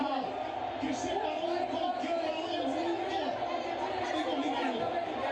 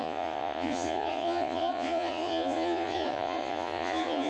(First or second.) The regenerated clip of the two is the second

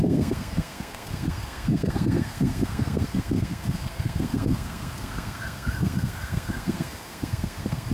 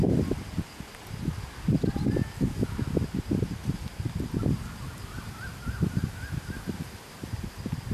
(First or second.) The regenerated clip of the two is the first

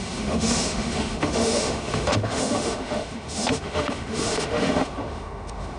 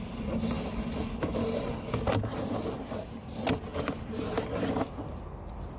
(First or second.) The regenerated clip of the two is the first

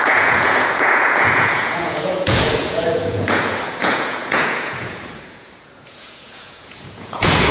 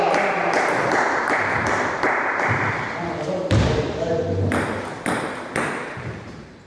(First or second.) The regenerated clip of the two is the first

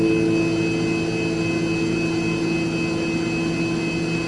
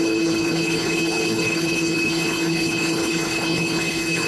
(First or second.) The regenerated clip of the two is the second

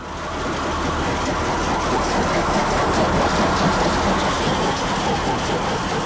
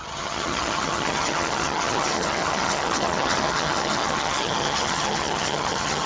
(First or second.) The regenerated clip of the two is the second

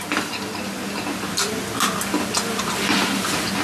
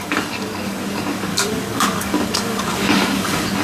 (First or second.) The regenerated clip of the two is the second